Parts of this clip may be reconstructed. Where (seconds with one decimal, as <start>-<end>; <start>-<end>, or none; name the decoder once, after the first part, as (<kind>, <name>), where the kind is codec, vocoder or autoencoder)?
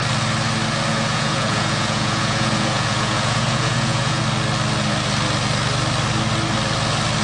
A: 0.9-4.2 (vocoder, Vocos)